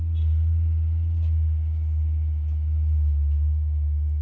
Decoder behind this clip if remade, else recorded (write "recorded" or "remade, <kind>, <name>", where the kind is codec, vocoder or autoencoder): recorded